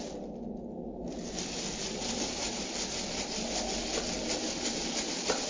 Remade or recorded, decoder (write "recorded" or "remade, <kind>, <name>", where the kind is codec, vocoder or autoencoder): recorded